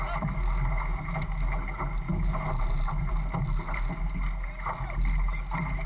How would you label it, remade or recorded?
recorded